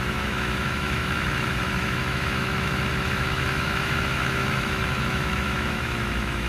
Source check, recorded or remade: remade